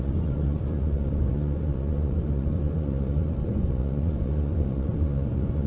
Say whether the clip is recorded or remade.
remade